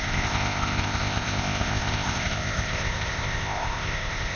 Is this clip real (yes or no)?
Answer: no